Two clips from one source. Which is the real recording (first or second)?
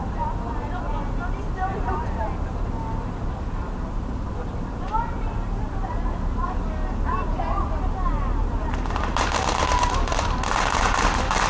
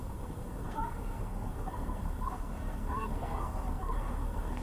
first